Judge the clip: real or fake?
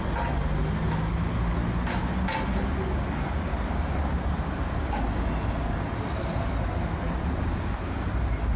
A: real